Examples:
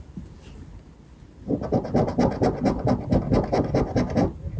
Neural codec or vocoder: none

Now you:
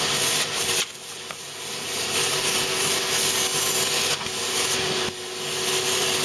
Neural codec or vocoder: none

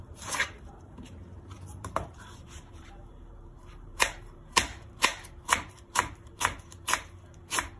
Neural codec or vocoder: vocoder, BigVGAN v2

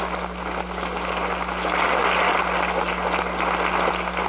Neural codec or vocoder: none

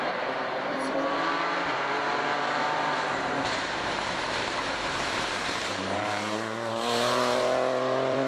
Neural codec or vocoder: vocoder, BigVGAN v2